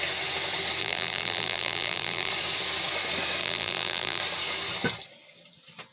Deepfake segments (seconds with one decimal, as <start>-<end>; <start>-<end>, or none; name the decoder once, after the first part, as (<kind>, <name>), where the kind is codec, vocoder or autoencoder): 0.8-2.3 (vocoder, BigVGAN v2); 3.4-4.2